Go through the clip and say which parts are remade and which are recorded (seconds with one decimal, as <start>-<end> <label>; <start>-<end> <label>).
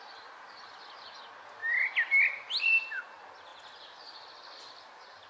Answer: 0.0-5.3 recorded